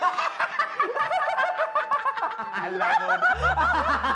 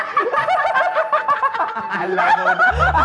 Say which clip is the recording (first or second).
first